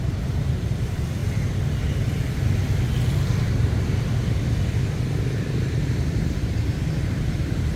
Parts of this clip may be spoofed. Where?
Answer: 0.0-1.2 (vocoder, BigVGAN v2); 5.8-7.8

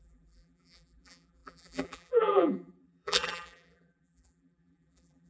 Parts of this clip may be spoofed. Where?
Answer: 0.0-5.3 (vocoder, BigVGAN v2)

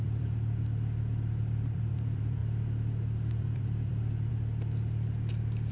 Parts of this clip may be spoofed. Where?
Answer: 0.0-2.4 (vocoder, BigVGAN v2); 3.3-4.3

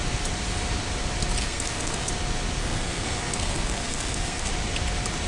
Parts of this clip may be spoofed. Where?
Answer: 1.4-2.1 (codec, SNAC); 2.6-4.5

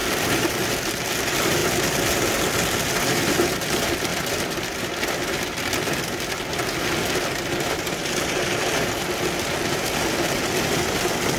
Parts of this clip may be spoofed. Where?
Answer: 0.0-1.6 (vocoder, BigVGAN v2); 2.2-4.1; 6.3-11.4